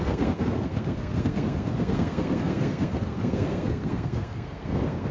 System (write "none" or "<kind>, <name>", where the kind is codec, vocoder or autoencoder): codec, SNAC